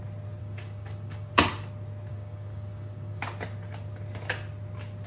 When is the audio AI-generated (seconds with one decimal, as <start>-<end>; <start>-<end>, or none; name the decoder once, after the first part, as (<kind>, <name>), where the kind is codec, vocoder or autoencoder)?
0.4-1.3 (codec, DAC); 2.1-3.2

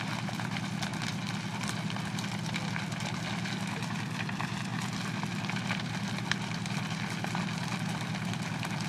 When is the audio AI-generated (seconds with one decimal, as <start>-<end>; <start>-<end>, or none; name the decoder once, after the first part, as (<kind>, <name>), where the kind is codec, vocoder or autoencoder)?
none

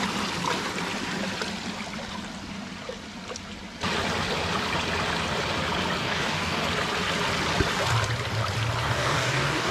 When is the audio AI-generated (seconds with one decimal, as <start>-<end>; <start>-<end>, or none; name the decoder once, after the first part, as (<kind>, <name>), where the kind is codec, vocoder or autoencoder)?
6.0-6.6 (codec, DAC); 8.8-9.7